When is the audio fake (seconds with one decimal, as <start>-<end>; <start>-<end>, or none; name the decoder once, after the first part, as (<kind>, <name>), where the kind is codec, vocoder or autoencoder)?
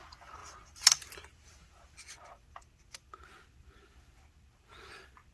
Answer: none